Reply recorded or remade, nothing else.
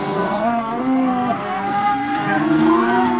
remade